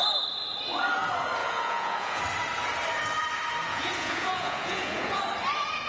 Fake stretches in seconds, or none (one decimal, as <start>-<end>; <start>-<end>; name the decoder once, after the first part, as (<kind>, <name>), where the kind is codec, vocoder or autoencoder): 1.4-2.2 (vocoder, Vocos); 3.7-5.2

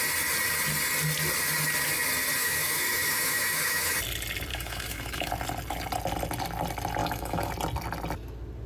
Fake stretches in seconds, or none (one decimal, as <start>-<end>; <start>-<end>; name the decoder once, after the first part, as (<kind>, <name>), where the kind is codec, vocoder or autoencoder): 2.4-4.0 (autoencoder, DAC-VAE); 4.5-5.3; 7.0-7.5

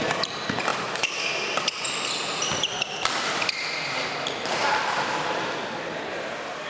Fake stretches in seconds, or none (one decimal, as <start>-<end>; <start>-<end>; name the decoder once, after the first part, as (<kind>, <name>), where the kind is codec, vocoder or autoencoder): none

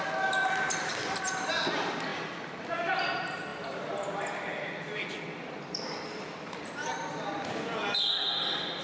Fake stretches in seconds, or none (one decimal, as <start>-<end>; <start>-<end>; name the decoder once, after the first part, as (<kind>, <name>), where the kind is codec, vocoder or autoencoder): 3.5-8.0 (vocoder, BigVGAN v2)

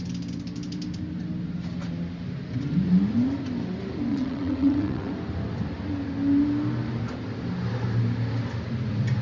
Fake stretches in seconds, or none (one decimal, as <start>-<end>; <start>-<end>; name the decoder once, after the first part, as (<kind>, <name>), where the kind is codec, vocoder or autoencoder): 4.1-5.1 (vocoder, WaveNeXt)

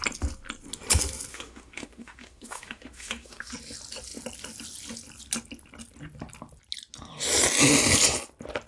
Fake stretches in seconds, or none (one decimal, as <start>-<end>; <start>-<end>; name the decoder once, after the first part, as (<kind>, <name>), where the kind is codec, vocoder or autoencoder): 1.3-3.5 (autoencoder, DAC-VAE)

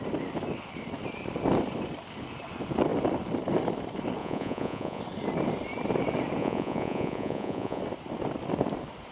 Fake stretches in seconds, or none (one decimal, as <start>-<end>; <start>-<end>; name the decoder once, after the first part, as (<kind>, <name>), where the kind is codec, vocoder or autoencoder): 4.2-5.0 (vocoder, Vocos); 6.4-7.8

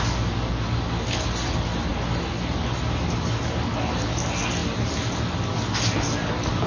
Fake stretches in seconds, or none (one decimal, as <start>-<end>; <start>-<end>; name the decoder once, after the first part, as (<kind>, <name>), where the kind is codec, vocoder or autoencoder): none